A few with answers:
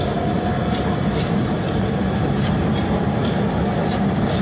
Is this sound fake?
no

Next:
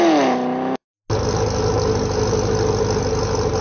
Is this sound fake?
no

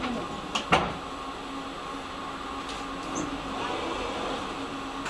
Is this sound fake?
no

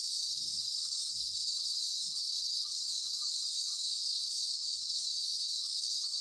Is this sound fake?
yes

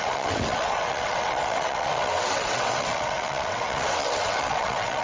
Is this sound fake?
yes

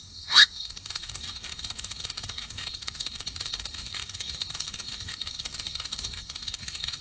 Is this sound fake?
yes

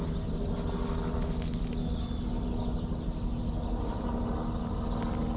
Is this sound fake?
no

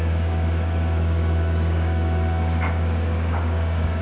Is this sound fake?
yes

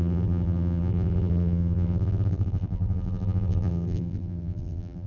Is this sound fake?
yes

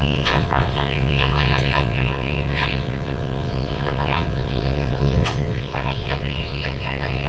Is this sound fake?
yes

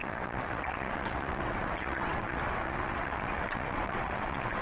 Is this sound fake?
yes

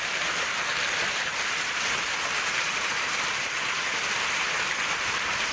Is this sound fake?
yes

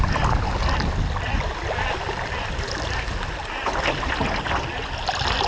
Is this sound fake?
no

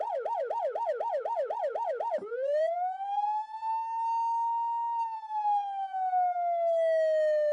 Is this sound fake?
no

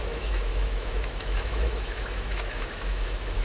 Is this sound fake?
yes